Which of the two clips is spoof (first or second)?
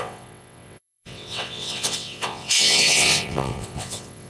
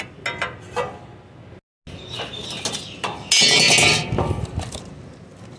first